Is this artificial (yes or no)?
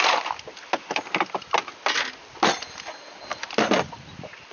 no